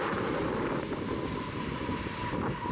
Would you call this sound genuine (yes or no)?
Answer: yes